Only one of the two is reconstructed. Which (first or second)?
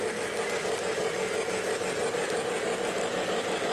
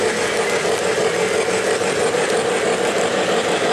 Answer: second